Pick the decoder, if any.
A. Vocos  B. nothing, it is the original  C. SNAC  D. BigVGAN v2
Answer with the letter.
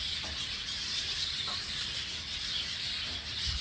D